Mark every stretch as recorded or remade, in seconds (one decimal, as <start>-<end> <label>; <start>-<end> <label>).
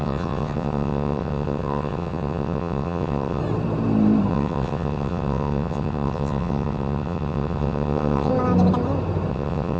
0.0-3.4 remade; 3.4-4.3 recorded; 4.3-8.3 remade; 8.3-9.3 recorded; 9.3-9.8 remade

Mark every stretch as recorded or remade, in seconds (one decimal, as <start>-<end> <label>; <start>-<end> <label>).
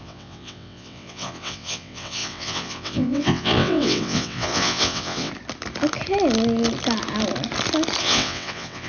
0.0-5.3 remade; 5.3-8.0 recorded; 8.0-8.9 remade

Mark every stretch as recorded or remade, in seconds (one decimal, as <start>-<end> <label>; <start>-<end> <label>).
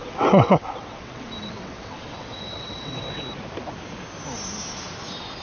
0.0-3.2 remade; 3.2-5.4 recorded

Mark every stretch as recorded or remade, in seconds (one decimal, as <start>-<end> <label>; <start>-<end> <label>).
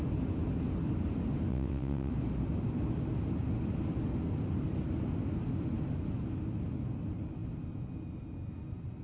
0.0-1.5 recorded; 1.5-2.1 remade; 2.1-9.0 recorded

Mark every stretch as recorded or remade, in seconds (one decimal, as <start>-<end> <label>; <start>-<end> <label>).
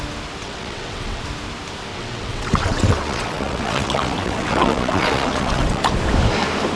0.0-0.4 recorded; 0.4-1.2 remade; 1.2-1.9 recorded; 1.9-5.8 remade; 5.8-6.8 recorded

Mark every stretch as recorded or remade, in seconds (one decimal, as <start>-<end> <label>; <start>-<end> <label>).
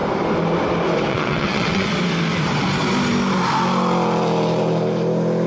0.0-1.1 recorded; 1.1-1.9 remade; 1.9-5.5 recorded